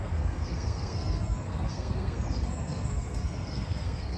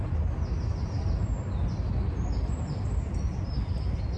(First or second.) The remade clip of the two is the first